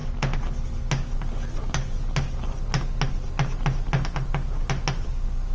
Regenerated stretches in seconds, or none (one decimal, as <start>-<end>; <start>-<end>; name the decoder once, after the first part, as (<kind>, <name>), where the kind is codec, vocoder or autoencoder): none